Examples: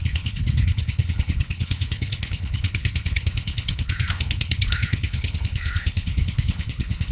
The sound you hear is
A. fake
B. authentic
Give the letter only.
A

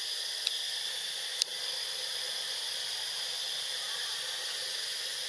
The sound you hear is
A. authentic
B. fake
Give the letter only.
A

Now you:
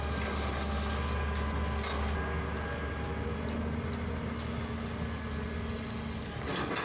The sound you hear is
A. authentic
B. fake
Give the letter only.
A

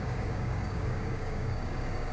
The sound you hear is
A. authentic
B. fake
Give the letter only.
B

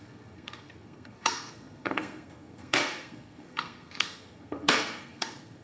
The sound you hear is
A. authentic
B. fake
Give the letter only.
B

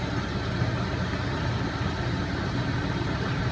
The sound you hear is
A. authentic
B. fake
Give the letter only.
A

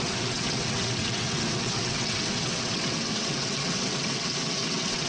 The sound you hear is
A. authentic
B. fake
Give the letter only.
B